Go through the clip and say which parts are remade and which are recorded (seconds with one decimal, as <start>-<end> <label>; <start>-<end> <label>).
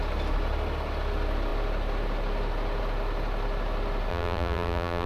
0.0-4.1 recorded; 4.1-5.1 remade